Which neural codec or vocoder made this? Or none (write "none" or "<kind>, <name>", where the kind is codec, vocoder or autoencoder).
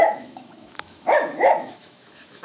autoencoder, DAC-VAE